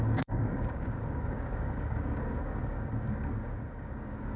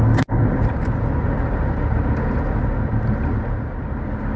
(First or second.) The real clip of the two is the second